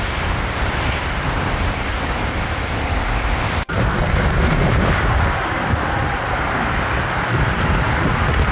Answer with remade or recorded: remade